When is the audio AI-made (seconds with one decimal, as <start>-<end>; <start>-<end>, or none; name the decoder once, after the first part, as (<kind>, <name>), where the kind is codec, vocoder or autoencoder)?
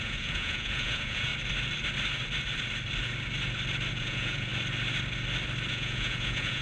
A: 0.0-1.3 (vocoder, Vocos); 3.9-4.5; 5.7-6.6